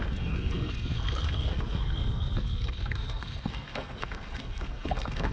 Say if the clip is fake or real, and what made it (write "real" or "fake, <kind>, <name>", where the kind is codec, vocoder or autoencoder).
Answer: fake, codec, SNAC